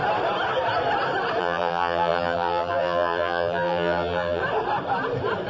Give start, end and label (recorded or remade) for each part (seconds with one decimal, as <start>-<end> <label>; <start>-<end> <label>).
0.0-1.4 recorded; 1.4-4.4 remade; 4.4-5.5 recorded